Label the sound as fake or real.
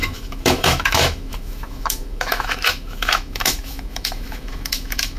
fake